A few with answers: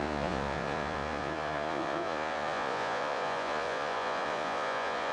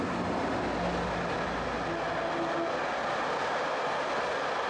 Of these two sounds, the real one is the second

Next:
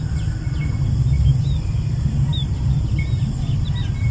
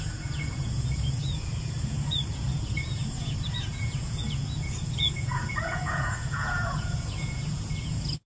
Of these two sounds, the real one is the first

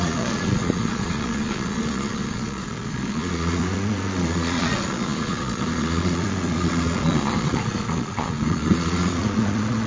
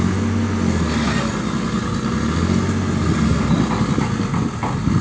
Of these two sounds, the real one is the second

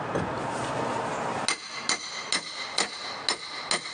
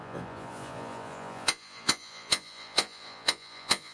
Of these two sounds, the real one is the first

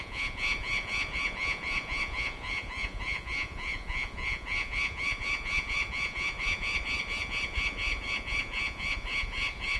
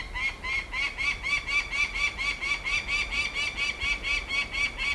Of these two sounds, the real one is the second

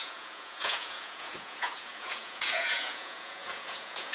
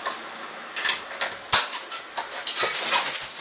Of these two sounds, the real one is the second